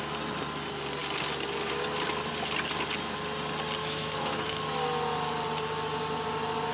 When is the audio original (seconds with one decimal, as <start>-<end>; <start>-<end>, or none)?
0.0-3.8; 4.5-6.7